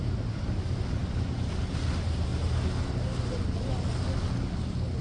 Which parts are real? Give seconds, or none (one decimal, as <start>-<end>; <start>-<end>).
1.0-1.7; 2.3-5.0